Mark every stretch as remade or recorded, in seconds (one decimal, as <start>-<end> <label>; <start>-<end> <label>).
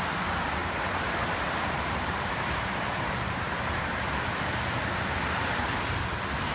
0.0-0.6 recorded; 0.6-4.5 remade; 4.5-6.5 recorded